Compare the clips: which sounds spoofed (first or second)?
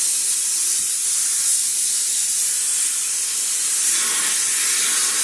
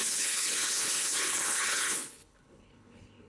second